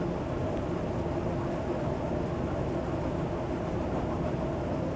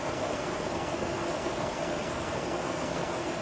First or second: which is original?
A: first